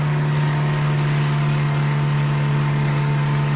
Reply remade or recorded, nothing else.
remade